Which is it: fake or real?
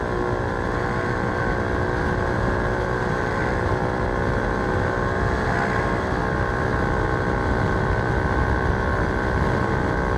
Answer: real